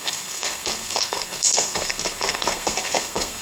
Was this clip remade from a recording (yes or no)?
yes